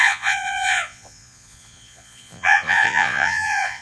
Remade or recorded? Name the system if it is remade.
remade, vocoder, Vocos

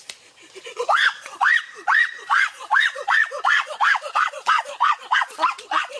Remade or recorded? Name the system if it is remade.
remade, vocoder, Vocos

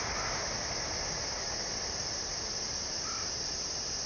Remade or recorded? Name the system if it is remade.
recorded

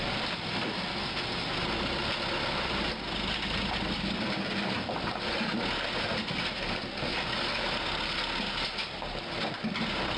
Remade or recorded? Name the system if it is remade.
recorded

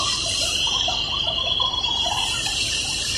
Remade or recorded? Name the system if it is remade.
remade, vocoder, BigVGAN v2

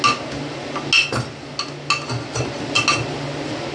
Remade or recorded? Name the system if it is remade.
recorded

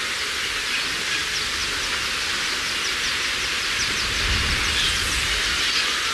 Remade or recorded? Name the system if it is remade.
recorded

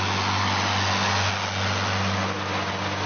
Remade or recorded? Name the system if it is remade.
recorded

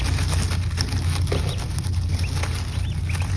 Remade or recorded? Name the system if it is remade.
recorded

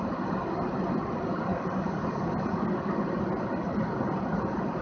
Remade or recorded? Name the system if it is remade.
recorded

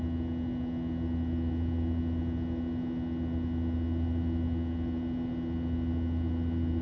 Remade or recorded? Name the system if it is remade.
recorded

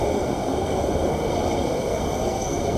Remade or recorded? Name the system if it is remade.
remade, codec, SNAC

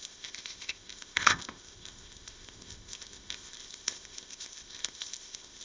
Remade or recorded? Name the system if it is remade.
remade, codec, ZipCodec